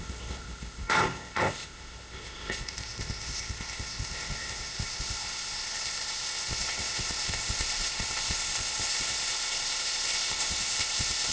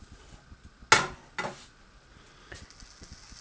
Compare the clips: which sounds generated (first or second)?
first